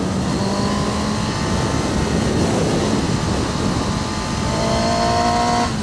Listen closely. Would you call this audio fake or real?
real